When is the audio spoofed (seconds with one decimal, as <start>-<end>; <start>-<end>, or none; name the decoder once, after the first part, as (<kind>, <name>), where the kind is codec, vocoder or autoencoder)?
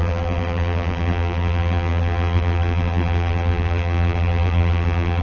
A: 0.0-5.2 (vocoder, BigVGAN v2)